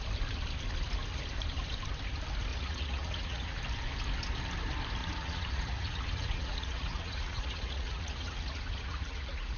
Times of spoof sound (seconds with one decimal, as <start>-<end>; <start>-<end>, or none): 2.5-3.6; 5.0-9.6